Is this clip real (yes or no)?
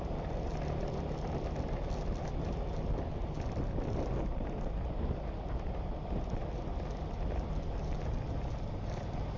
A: yes